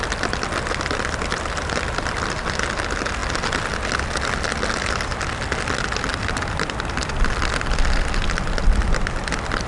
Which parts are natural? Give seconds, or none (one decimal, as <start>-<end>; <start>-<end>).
0.0-9.7